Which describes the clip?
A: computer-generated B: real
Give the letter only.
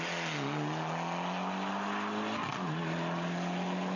B